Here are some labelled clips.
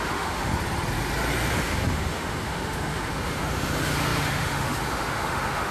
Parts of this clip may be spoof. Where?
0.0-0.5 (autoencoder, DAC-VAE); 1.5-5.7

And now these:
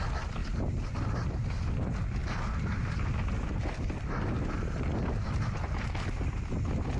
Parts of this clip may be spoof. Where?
none

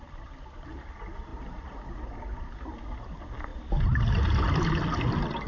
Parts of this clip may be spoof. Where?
none

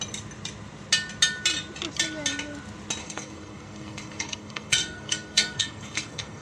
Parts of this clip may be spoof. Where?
3.0-6.4 (codec, SNAC)

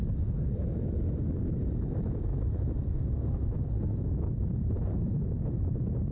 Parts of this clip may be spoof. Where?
2.3-6.1 (vocoder, BigVGAN v2)